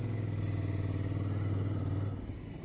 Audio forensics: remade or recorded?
recorded